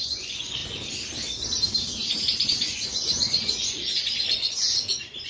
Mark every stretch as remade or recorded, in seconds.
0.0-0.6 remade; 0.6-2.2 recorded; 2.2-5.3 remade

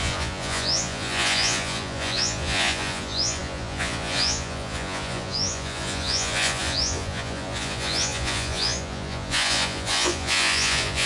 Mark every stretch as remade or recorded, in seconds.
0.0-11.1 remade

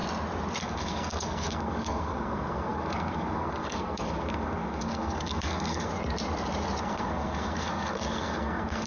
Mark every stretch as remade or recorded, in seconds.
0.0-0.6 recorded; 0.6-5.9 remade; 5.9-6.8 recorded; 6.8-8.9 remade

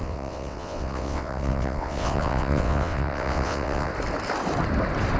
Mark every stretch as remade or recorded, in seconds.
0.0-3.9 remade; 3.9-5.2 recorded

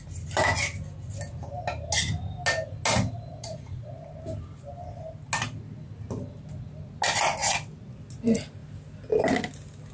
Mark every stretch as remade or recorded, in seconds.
0.0-3.3 recorded; 3.3-4.0 remade; 4.0-9.9 recorded